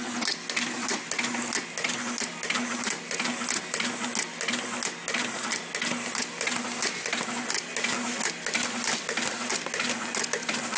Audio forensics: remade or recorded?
recorded